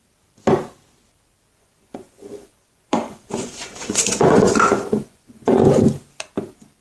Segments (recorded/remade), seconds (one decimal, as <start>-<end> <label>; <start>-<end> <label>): 0.0-1.5 recorded; 1.5-5.6 remade; 5.6-6.8 recorded